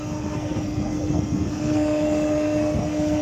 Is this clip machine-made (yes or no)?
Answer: yes